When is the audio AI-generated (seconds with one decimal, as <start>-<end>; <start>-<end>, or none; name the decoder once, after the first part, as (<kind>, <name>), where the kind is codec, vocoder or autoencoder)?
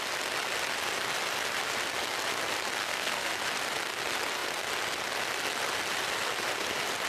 2.8-3.3 (codec, SNAC)